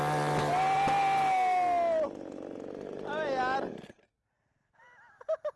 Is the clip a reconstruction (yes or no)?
no